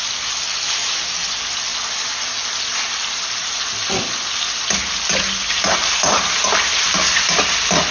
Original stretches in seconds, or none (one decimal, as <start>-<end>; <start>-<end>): 0.0-7.9